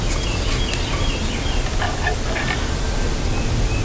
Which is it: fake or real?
real